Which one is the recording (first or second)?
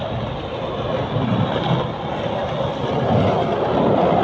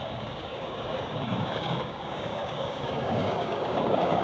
first